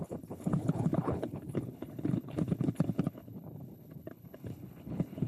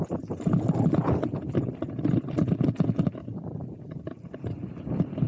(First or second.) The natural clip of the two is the second